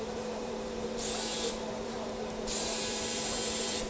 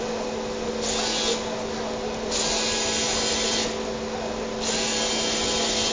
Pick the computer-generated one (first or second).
first